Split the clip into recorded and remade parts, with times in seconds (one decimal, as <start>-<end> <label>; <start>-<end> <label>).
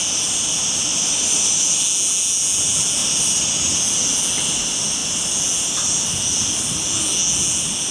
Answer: 0.0-0.9 recorded; 0.9-1.8 remade; 1.8-3.0 recorded; 3.0-3.5 remade; 3.5-7.9 recorded